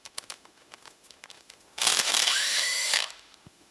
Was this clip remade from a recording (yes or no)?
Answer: yes